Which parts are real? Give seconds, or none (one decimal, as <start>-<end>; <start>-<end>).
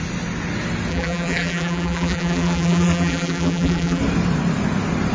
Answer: 0.0-0.9; 4.0-5.1